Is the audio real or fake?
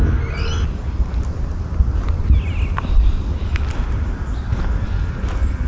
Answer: real